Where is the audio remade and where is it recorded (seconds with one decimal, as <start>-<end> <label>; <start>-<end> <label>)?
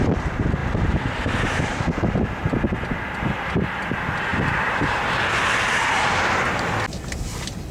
0.0-7.7 recorded